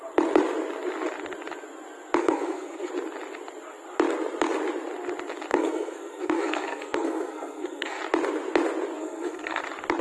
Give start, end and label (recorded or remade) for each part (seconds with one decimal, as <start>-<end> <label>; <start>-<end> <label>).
0.0-2.2 recorded; 2.2-2.9 remade; 2.9-5.5 recorded; 5.5-8.0 remade; 8.0-9.0 recorded; 9.0-9.6 remade; 9.6-10.0 recorded